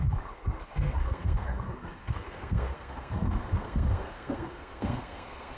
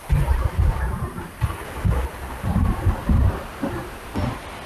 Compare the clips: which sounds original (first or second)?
second